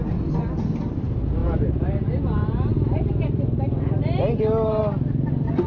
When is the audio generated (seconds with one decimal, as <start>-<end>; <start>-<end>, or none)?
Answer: none